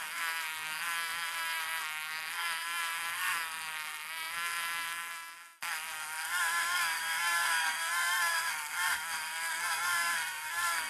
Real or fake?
fake